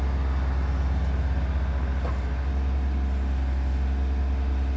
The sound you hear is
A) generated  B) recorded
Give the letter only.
B